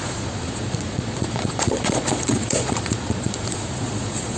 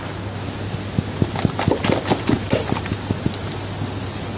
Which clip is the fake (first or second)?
first